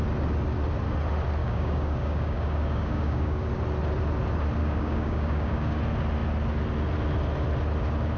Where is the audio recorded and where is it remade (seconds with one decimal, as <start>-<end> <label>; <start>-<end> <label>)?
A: 0.0-1.4 recorded; 1.4-3.5 remade; 3.5-4.6 recorded; 4.6-5.8 remade; 5.8-8.2 recorded